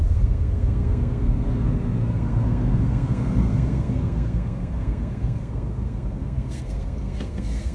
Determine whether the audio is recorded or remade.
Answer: remade